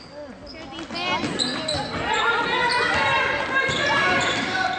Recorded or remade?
recorded